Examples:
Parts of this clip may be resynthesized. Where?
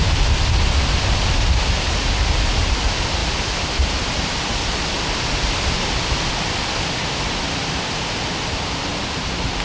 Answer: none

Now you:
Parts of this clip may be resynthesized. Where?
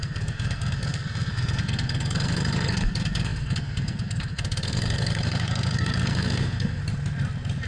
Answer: 0.0-6.8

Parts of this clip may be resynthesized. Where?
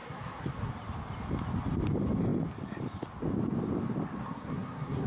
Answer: 0.0-0.7; 4.2-5.1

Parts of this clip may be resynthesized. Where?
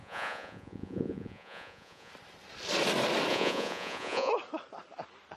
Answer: 0.0-2.1; 3.3-4.3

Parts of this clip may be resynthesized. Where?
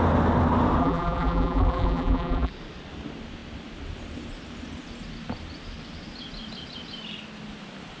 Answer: 0.8-2.5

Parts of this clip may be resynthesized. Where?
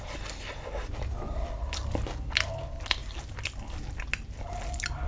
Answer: none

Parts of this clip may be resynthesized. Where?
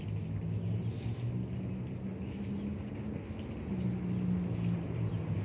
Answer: none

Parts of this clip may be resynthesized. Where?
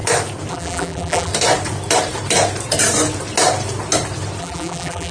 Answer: 0.5-1.3; 4.4-5.1